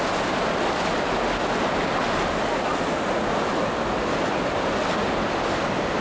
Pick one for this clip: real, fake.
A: real